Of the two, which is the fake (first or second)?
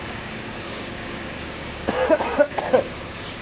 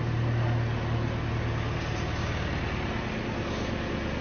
first